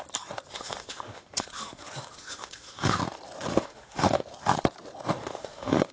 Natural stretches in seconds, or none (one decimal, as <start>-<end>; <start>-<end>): 0.0-0.5; 3.0-3.5; 4.2-5.2